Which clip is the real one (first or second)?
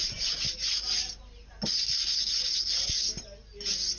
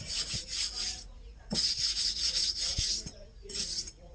first